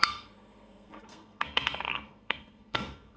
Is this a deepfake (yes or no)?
yes